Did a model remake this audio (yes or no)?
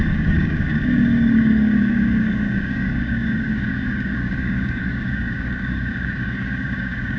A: yes